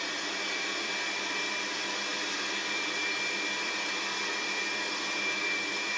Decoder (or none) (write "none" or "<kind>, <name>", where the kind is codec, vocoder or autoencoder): vocoder, BigVGAN v2